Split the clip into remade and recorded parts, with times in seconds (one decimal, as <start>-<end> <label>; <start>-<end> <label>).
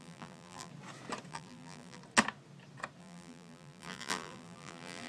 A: 0.0-0.7 remade; 0.7-1.3 recorded; 1.3-2.0 remade; 2.0-3.0 recorded; 3.0-5.1 remade